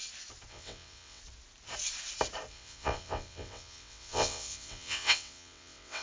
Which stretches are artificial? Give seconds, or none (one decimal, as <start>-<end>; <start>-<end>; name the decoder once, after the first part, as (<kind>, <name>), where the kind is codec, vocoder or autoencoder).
0.5-1.2 (vocoder, WaveNeXt); 2.5-6.0

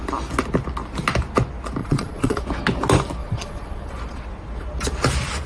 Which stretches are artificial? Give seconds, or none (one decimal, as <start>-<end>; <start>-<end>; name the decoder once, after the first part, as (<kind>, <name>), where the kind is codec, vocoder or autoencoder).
1.8-2.4 (vocoder, Vocos); 3.2-4.2